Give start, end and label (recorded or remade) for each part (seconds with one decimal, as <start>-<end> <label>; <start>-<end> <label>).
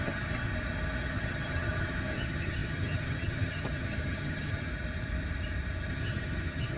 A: 0.0-0.5 remade; 0.5-1.1 recorded; 1.1-4.7 remade; 4.7-5.9 recorded; 5.9-6.8 remade